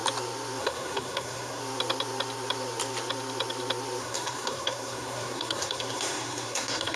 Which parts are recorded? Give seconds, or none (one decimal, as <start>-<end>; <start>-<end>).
0.0-0.6; 1.6-4.0